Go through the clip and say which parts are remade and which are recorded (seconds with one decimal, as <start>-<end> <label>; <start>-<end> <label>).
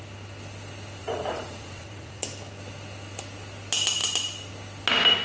0.0-1.0 recorded; 1.0-2.2 remade; 2.2-5.2 recorded